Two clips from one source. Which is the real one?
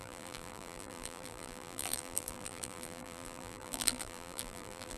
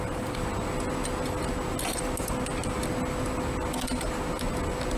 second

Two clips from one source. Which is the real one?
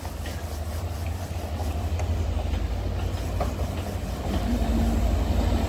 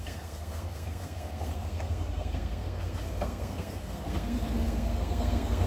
first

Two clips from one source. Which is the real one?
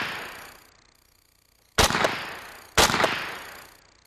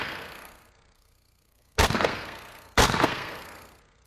first